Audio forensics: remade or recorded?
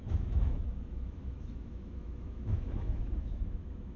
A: remade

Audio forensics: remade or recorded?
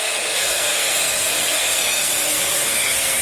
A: remade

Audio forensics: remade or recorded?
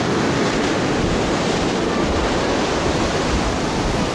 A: remade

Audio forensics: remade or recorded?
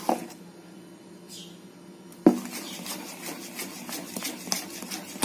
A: recorded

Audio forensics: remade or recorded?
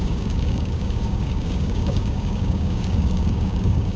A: remade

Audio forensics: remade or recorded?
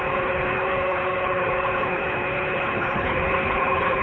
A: remade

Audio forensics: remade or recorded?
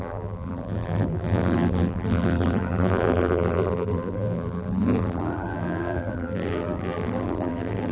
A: remade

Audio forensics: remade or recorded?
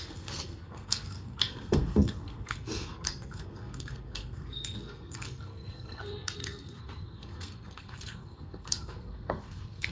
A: remade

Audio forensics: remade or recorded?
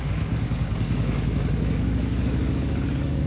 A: remade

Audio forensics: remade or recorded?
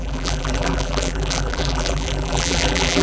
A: remade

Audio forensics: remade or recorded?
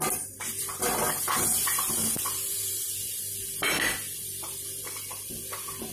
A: recorded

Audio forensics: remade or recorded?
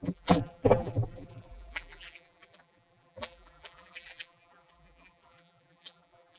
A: remade